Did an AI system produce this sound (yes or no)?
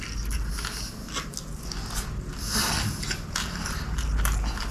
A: no